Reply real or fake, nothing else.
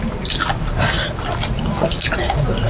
real